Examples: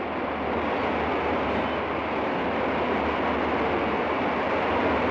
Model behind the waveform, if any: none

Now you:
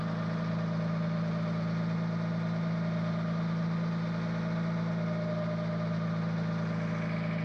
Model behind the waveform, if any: none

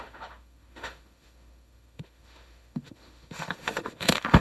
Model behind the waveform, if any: autoencoder, DAC-VAE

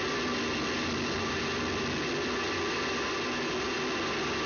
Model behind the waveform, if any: none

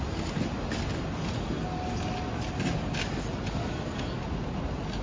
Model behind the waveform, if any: none